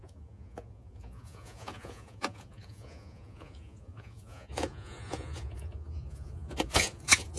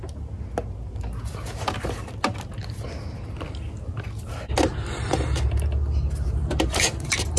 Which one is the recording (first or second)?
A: second